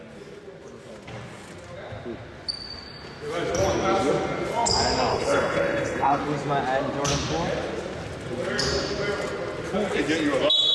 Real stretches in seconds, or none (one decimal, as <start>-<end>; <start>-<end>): 0.0-5.1; 6.2-10.7